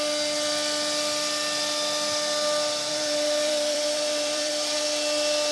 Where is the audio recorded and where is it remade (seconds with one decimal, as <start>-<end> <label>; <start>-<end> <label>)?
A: 0.0-2.9 recorded; 2.9-4.5 remade; 4.5-5.5 recorded